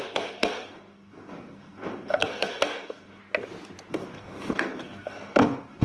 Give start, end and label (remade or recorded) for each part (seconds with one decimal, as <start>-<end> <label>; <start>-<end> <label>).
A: 0.0-3.2 remade; 3.2-3.9 recorded; 3.9-5.8 remade